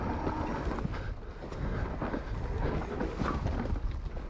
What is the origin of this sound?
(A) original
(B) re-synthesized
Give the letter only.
A